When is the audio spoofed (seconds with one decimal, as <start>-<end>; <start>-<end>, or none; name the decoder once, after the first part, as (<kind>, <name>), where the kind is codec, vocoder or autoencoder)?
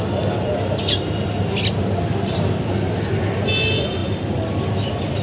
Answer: 4.0-4.6 (vocoder, BigVGAN v2)